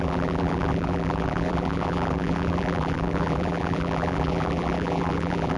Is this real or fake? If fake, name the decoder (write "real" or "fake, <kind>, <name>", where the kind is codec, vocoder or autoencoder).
fake, vocoder, BigVGAN v2